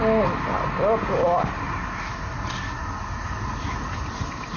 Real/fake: real